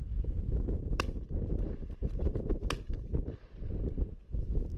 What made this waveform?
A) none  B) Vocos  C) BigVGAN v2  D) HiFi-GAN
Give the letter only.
C